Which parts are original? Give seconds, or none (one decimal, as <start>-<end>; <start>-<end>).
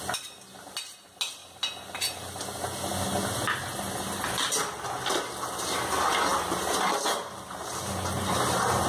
0.0-8.9